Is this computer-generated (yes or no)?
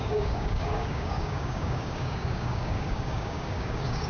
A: yes